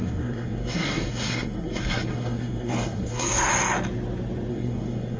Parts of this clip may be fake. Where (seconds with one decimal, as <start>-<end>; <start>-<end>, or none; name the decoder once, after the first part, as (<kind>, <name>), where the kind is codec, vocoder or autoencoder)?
0.0-3.5 (codec, SNAC); 4.5-5.2